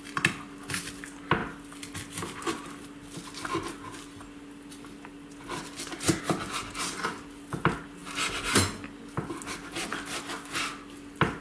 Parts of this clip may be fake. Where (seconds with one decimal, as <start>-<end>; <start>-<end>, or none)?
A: none